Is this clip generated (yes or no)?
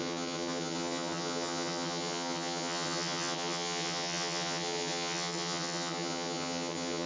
yes